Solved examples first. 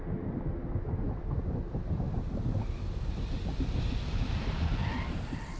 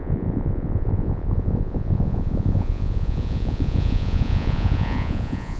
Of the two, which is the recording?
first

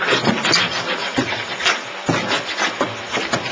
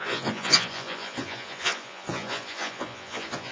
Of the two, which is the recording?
first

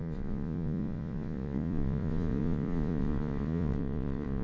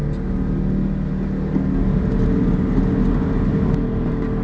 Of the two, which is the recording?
second